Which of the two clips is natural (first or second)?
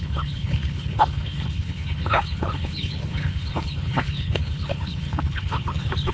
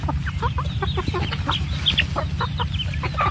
second